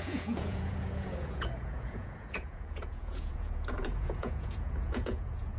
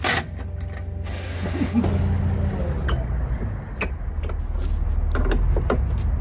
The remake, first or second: first